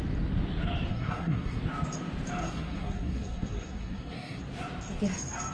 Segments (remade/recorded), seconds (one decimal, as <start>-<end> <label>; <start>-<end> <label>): 0.0-0.9 recorded; 0.9-1.6 remade; 1.6-2.4 recorded; 2.4-4.4 remade; 4.4-5.5 recorded